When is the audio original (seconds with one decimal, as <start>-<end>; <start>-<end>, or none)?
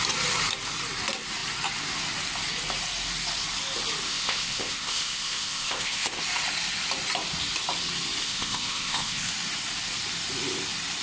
0.0-4.1; 6.2-8.2; 9.3-11.0